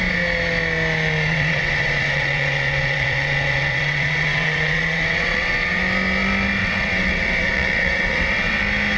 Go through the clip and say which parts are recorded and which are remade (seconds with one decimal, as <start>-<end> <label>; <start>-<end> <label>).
0.0-1.3 recorded; 1.3-5.8 remade; 5.8-6.6 recorded; 6.6-8.6 remade; 8.6-9.0 recorded